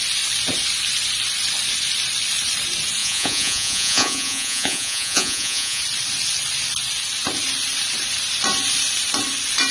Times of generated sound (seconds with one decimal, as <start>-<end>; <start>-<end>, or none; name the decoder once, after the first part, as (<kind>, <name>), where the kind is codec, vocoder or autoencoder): 3.0-5.8 (vocoder, Vocos)